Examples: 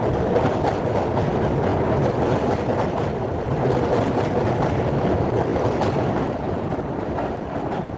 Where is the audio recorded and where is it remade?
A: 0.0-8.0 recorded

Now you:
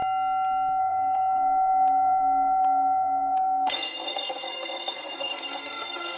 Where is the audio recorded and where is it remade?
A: 0.0-0.8 recorded; 0.8-6.2 remade

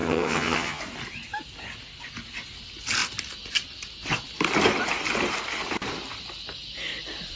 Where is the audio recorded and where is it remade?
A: 0.0-0.8 remade; 0.8-7.4 recorded

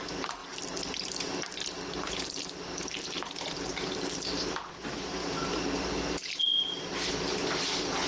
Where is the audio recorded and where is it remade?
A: 0.0-5.2 recorded; 5.2-6.8 remade; 6.8-8.1 recorded

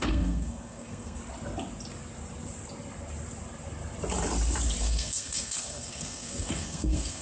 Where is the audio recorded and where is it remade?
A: 0.0-1.2 remade; 1.2-4.8 recorded; 4.8-7.2 remade

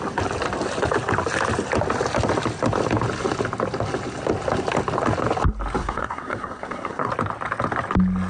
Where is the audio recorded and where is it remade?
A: 0.0-5.8 recorded; 5.8-7.1 remade; 7.1-8.3 recorded

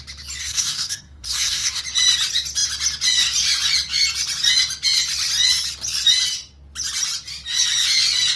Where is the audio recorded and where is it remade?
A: 0.0-0.4 recorded; 0.4-1.8 remade; 1.8-8.4 recorded